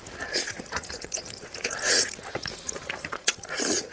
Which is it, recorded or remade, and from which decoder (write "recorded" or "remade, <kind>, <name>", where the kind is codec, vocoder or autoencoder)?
remade, vocoder, Vocos